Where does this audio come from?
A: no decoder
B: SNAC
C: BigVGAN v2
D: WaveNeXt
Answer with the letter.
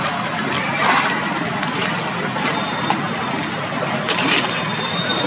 A